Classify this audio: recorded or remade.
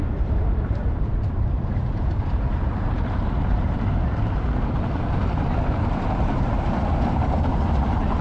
remade